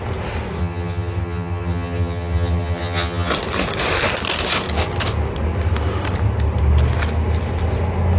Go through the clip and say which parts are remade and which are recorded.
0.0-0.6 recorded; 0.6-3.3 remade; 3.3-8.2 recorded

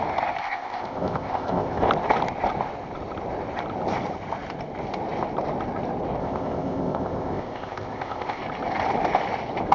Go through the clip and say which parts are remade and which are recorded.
0.0-0.4 recorded; 0.4-1.9 remade; 1.9-6.2 recorded; 6.2-8.4 remade; 8.4-9.7 recorded

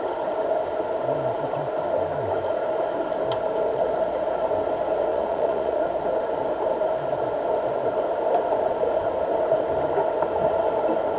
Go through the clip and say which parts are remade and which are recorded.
0.0-5.1 recorded; 5.1-5.9 remade; 5.9-11.2 recorded